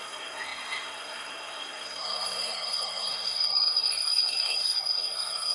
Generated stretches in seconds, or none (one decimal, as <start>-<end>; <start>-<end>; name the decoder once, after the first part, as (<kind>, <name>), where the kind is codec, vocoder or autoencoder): 0.0-5.5 (codec, SNAC)